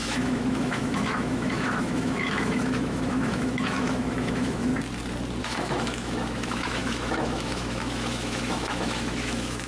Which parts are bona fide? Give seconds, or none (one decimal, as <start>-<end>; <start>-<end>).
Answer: 4.7-5.4